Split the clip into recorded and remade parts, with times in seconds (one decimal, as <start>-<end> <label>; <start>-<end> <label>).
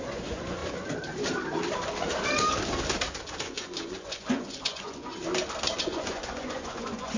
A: 0.0-0.6 remade; 0.6-3.4 recorded; 3.4-5.1 remade; 5.1-5.8 recorded; 5.8-7.2 remade